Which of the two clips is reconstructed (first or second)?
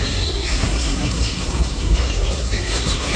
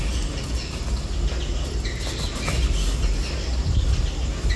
first